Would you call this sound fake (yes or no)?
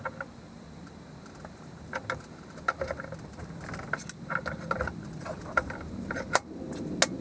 no